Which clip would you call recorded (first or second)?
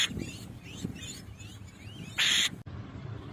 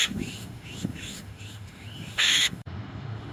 first